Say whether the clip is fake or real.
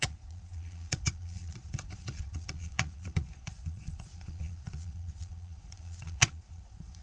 fake